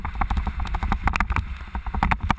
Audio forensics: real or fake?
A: real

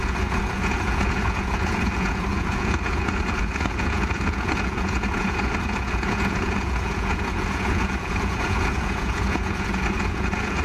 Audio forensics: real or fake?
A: fake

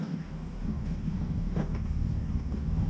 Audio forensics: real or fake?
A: fake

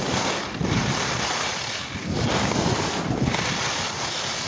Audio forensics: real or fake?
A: real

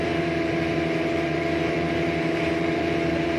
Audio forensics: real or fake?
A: fake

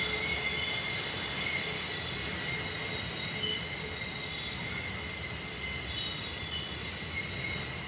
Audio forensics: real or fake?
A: real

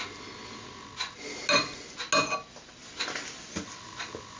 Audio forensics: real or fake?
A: real